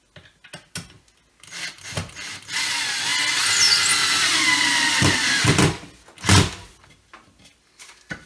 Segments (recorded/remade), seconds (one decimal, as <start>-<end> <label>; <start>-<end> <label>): 0.0-8.3 recorded